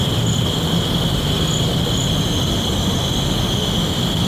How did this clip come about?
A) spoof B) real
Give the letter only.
B